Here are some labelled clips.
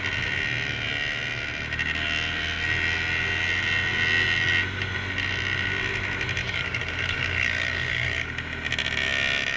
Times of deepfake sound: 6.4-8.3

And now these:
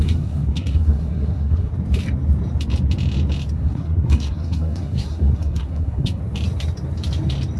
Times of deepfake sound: 0.0-1.7; 3.5-6.2

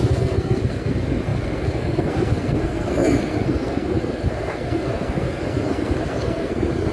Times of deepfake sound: 0.0-6.9

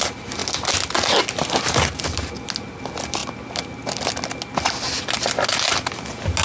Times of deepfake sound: none

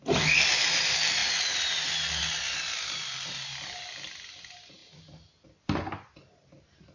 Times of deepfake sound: none